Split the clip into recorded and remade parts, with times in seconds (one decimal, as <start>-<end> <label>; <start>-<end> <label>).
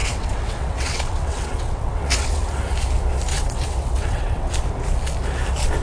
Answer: 0.0-2.6 remade; 2.6-3.3 recorded; 3.3-4.5 remade; 4.5-5.8 recorded